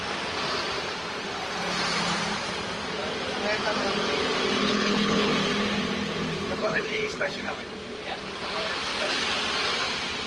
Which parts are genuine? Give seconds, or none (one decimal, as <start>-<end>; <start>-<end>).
0.0-4.6; 5.3-6.6; 7.4-10.3